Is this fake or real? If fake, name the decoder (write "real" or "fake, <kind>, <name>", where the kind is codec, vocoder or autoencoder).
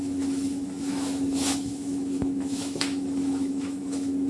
fake, autoencoder, DAC-VAE